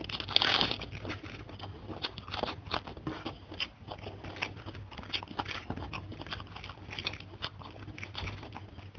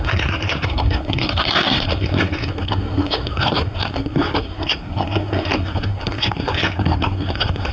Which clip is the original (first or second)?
first